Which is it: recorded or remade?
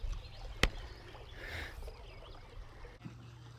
recorded